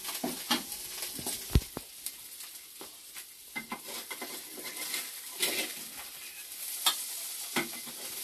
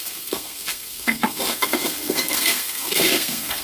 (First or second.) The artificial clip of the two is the second